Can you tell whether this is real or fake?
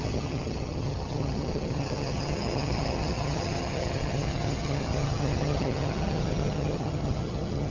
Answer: fake